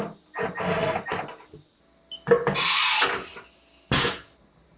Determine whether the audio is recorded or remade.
recorded